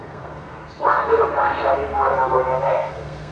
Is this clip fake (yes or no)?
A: yes